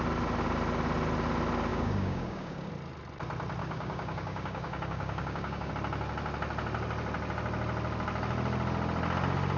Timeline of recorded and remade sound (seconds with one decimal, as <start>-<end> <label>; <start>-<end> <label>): 0.0-1.7 recorded; 1.7-2.7 remade; 2.7-3.6 recorded; 3.6-5.7 remade; 5.7-9.6 recorded